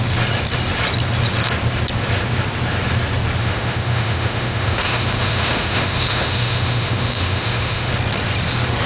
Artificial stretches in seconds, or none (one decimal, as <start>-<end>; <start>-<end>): 3.4-7.9